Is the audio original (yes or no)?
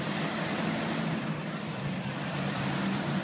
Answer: yes